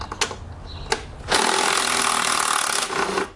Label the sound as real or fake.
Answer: real